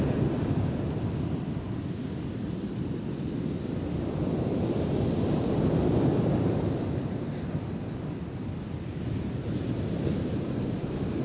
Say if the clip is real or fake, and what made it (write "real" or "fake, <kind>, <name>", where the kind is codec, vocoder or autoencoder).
fake, vocoder, BigVGAN v2